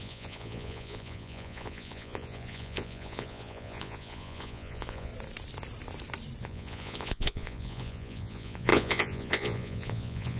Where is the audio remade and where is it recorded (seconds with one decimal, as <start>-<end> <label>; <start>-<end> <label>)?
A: 0.0-5.1 remade; 5.1-6.4 recorded; 6.4-10.4 remade